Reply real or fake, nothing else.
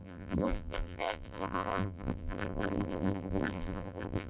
fake